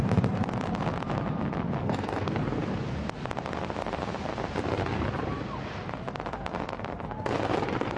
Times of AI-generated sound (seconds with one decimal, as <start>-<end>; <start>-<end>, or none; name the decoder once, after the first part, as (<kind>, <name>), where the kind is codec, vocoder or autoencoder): 1.8-2.4 (codec, SNAC)